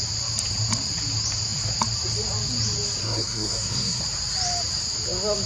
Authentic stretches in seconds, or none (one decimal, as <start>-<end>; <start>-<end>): 0.0-3.0; 4.0-5.5

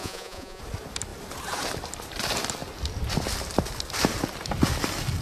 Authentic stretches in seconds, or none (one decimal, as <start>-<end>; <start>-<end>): 0.6-5.2

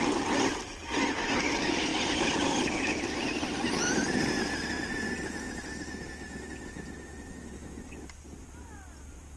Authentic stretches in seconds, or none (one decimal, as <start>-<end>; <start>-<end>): 0.0-9.4

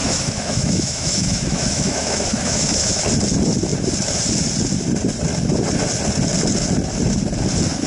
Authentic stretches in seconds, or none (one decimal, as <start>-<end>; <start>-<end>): 3.0-7.9